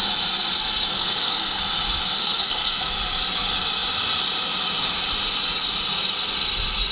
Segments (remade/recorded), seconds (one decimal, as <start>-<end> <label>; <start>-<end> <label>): 0.0-0.6 recorded; 0.6-1.6 remade; 1.6-2.2 recorded; 2.2-2.9 remade; 2.9-6.9 recorded